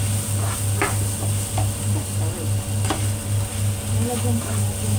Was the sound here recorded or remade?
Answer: recorded